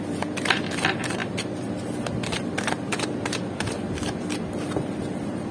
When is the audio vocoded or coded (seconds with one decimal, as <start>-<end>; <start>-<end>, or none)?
0.0-5.5